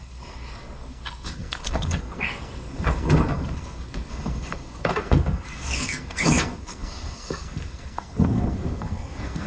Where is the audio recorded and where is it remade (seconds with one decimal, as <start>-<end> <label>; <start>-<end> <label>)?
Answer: 0.0-9.5 remade